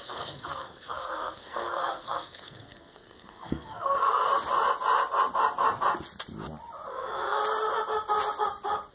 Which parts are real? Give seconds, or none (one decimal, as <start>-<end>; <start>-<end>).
4.3-6.9; 7.4-8.9